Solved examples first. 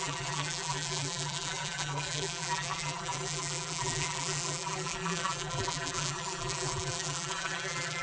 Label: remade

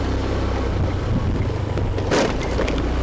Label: recorded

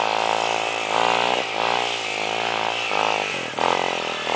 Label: remade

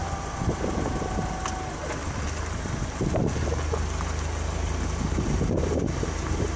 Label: recorded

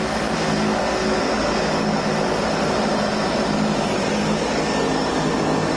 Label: recorded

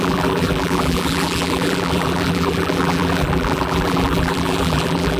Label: remade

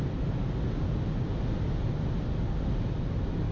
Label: recorded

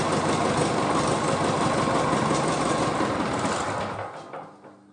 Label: recorded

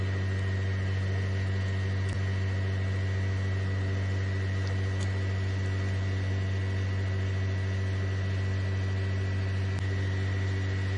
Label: recorded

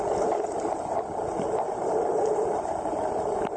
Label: remade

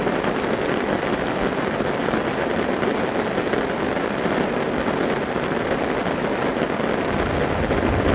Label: recorded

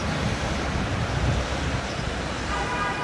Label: remade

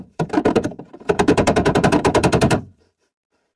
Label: remade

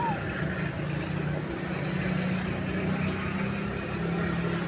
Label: recorded